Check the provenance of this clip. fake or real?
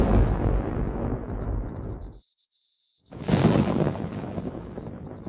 fake